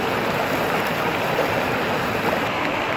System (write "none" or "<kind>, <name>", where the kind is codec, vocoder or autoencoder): none